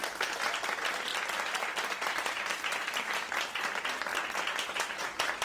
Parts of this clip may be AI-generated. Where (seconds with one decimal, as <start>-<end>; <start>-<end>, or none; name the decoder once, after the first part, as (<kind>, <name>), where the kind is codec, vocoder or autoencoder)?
none